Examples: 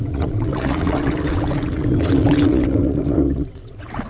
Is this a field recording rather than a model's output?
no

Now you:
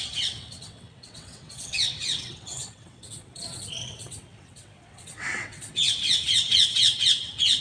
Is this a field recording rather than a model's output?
no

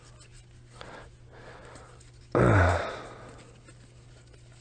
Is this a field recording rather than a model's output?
yes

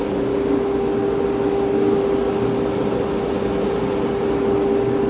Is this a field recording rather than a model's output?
yes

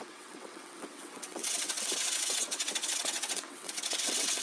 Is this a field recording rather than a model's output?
no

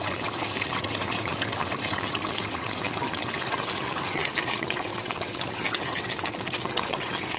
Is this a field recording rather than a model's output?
no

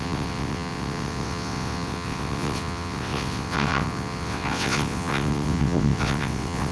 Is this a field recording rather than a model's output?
no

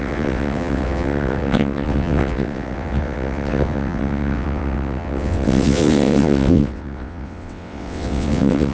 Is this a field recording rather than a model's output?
no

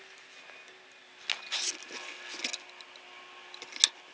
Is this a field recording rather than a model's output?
yes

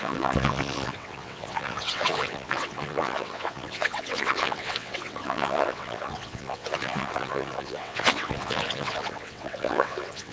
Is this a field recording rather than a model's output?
no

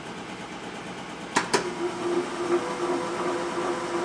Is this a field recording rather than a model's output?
yes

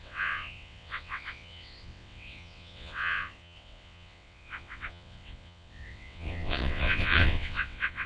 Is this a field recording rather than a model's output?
no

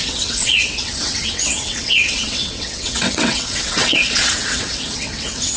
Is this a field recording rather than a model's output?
no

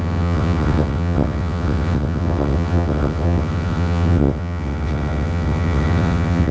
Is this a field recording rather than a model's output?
no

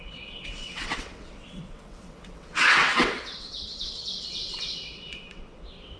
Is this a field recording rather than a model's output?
no